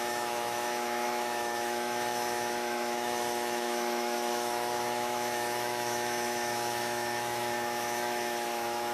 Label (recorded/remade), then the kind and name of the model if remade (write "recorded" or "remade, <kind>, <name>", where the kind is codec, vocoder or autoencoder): remade, autoencoder, DAC-VAE